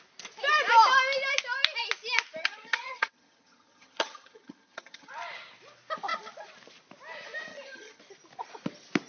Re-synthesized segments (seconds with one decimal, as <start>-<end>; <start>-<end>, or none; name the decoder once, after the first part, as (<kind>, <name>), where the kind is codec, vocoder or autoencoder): 2.4-5.1 (vocoder, HiFi-GAN); 7.5-8.0